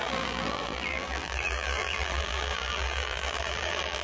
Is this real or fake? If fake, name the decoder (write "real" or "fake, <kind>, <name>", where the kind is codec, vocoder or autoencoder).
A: fake, vocoder, BigVGAN v2